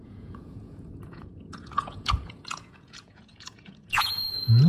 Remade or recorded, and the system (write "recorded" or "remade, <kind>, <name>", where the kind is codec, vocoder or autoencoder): remade, vocoder, Vocos